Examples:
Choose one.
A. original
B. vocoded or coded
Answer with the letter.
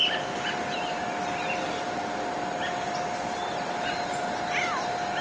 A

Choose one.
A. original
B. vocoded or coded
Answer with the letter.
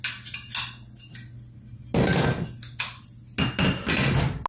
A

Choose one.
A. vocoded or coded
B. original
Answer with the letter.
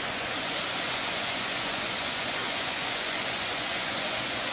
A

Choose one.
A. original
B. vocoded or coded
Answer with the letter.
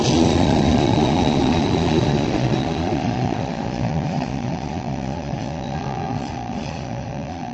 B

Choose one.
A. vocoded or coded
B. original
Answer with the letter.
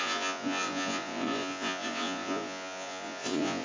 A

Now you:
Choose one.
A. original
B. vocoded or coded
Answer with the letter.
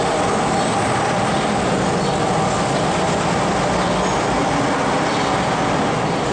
A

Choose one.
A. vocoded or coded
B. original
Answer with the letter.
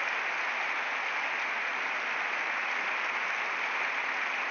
B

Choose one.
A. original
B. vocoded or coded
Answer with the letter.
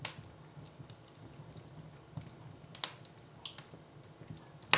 A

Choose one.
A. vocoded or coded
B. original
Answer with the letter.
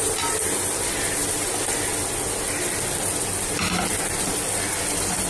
B